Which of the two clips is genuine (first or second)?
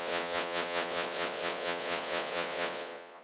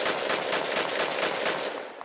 second